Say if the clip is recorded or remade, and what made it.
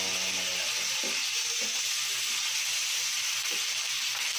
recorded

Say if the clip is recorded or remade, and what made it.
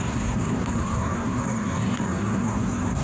remade, codec, SNAC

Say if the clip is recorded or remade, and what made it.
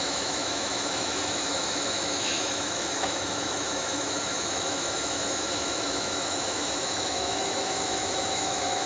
remade, autoencoder, DAC-VAE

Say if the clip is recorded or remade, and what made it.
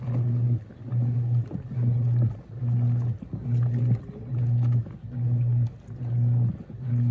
recorded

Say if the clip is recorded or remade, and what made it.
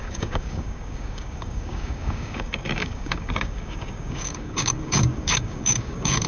remade, codec, DAC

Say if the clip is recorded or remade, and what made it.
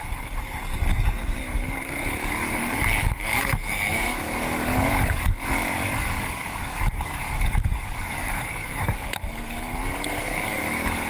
remade, codec, DAC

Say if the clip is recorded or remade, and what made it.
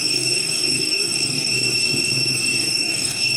remade, codec, DAC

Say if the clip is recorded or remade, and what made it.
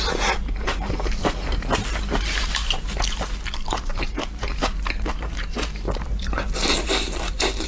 remade, vocoder, BigVGAN v2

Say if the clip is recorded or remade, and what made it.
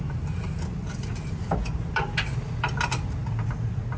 recorded